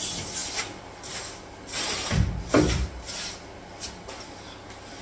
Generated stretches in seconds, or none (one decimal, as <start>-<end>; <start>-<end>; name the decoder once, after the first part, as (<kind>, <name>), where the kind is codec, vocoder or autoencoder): none